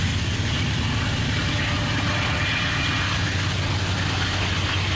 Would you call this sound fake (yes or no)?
no